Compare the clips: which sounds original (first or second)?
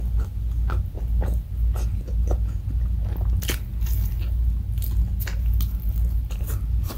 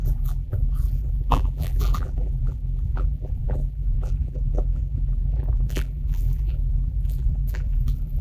first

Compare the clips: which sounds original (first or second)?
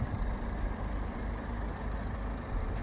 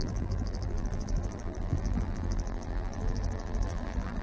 first